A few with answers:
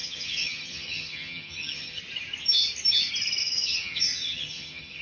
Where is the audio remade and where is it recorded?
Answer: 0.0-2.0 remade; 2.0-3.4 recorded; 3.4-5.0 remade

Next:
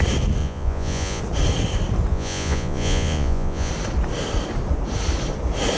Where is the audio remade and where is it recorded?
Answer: 0.0-0.4 recorded; 0.4-1.2 remade; 1.2-2.1 recorded; 2.1-3.7 remade; 3.7-5.8 recorded

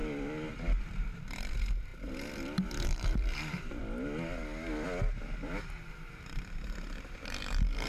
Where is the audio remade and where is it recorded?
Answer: 0.0-0.8 recorded; 0.8-3.8 remade; 3.8-5.8 recorded; 5.8-7.9 remade

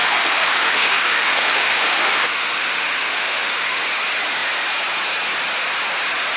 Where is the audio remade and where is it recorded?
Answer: 0.0-3.8 remade; 3.8-6.4 recorded

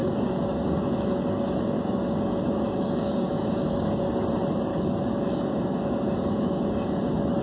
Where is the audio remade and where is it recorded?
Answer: 0.0-4.1 remade; 4.1-4.7 recorded; 4.7-7.4 remade

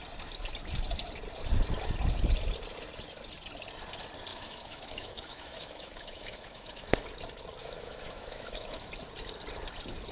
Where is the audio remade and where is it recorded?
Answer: 0.0-4.3 recorded; 4.3-6.9 remade; 6.9-7.6 recorded; 7.6-8.9 remade; 8.9-10.1 recorded

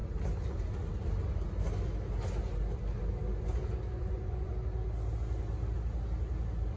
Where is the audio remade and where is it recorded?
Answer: 0.0-3.9 recorded; 3.9-4.5 remade; 4.5-6.8 recorded

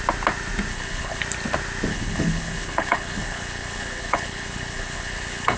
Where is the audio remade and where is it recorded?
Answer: 0.0-0.7 recorded; 0.7-1.2 remade; 1.2-1.9 recorded; 1.9-5.6 remade